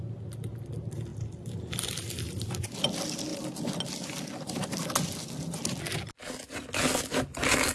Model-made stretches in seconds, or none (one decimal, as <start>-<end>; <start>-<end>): 1.1-2.5